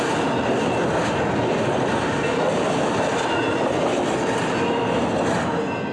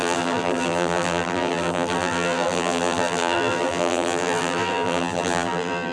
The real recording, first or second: first